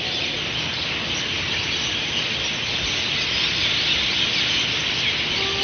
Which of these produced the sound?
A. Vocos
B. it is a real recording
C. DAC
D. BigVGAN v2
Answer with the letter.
B